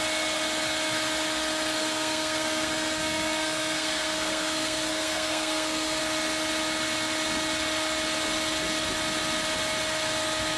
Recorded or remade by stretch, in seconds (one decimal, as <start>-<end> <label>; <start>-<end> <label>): 0.0-1.8 recorded; 1.8-6.0 remade; 6.0-10.6 recorded